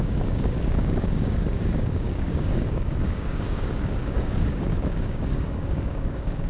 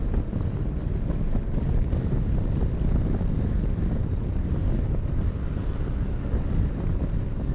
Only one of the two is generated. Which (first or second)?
first